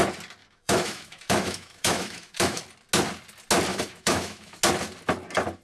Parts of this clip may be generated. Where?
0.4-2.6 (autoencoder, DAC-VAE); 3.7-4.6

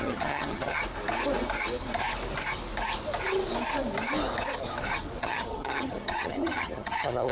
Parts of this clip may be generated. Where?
0.0-0.8 (vocoder, HiFi-GAN); 5.2-7.3

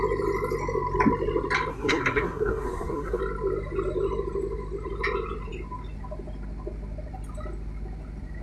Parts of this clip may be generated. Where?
1.7-3.2 (codec, SNAC)

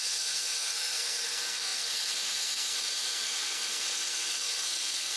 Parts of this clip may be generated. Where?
0.0-5.2 (codec, SNAC)

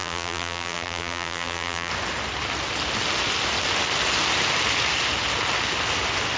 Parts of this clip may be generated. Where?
0.0-1.9 (vocoder, BigVGAN v2)

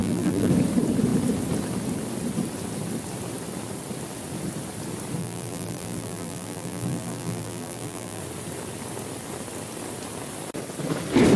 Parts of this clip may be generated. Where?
0.0-0.5 (vocoder, BigVGAN v2); 5.2-8.2

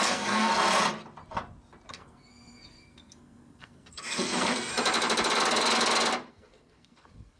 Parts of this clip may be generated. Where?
0.0-0.5 (codec, SNAC); 1.9-4.7; 6.3-7.4